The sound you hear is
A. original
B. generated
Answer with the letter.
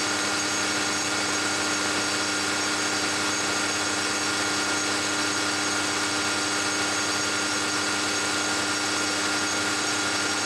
A